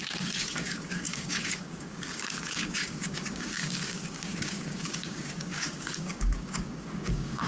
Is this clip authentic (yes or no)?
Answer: no